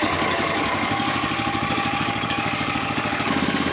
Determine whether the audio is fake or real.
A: fake